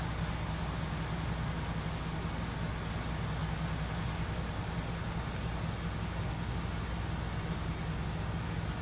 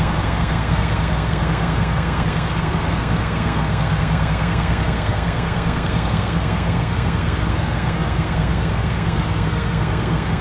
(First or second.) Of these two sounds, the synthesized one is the second